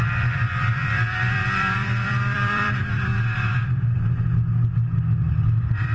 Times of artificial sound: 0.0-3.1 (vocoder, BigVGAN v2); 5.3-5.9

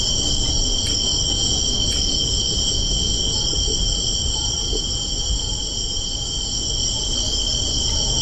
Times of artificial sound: 0.0-1.1 (vocoder, BigVGAN v2); 3.4-4.6; 5.6-6.8